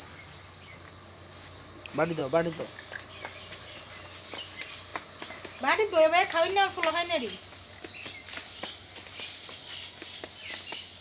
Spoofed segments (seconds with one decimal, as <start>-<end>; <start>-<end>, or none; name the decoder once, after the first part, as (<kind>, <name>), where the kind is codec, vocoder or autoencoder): none